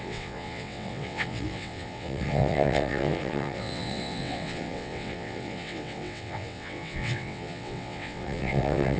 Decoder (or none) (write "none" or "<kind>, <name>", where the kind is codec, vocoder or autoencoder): vocoder, WaveNeXt